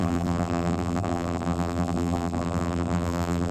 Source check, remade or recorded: remade